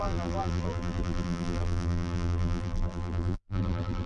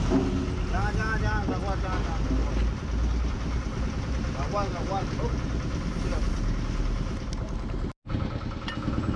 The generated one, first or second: first